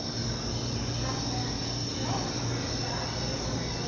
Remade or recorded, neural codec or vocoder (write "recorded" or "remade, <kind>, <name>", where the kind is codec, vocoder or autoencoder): recorded